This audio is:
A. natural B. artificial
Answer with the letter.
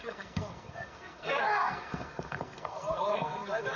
B